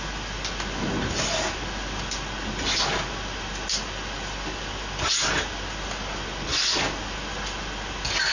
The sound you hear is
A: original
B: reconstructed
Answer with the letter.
A